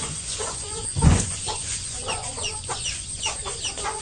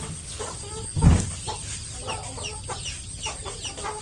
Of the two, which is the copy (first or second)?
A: first